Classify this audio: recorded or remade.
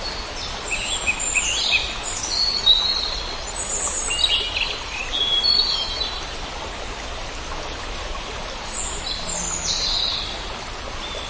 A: recorded